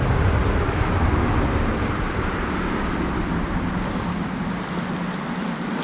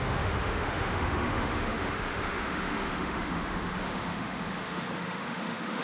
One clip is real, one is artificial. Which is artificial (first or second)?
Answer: second